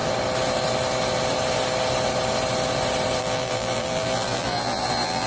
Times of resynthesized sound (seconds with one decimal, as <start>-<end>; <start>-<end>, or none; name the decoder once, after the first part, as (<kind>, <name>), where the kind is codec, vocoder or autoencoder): 3.2-5.3 (vocoder, BigVGAN v2)

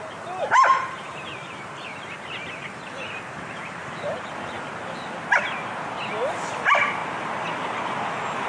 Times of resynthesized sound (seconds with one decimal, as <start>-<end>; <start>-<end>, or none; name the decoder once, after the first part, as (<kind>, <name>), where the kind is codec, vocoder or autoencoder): 0.7-4.3 (vocoder, BigVGAN v2)

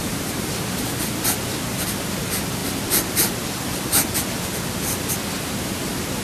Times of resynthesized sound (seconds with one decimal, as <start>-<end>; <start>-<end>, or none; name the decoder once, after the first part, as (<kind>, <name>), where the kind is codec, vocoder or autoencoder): 0.0-0.5 (vocoder, BigVGAN v2)

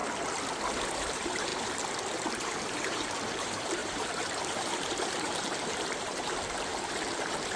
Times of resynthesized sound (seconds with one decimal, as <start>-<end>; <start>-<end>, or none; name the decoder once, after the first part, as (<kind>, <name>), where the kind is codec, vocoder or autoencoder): 1.1-1.5 (vocoder, BigVGAN v2); 2.3-7.6

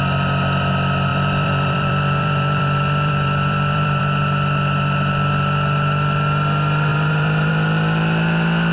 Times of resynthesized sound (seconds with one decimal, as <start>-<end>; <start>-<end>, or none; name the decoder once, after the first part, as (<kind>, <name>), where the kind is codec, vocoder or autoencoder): 1.1-4.0 (vocoder, BigVGAN v2); 6.9-7.5